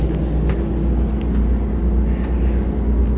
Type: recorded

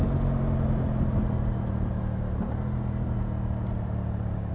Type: recorded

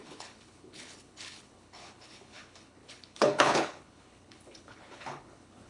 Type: remade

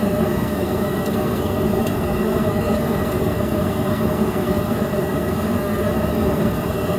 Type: remade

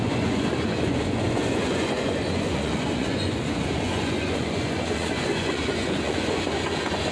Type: remade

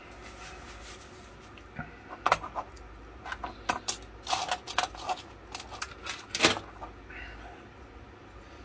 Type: recorded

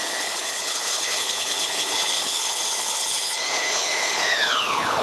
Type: remade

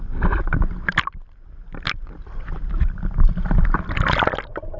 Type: recorded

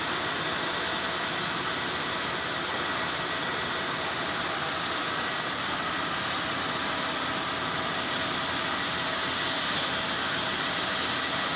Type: recorded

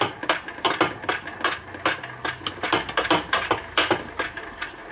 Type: recorded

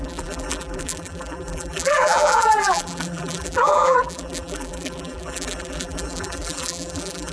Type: remade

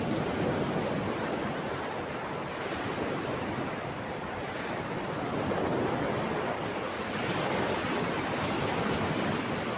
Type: recorded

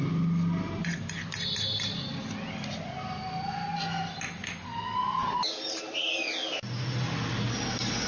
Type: recorded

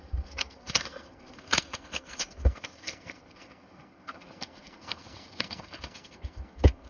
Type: remade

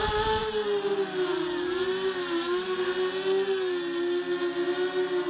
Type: recorded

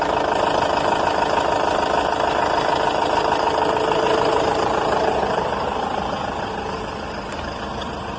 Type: recorded